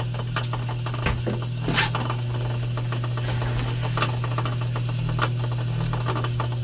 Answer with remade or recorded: recorded